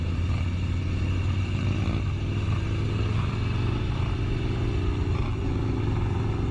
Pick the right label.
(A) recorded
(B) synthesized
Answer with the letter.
A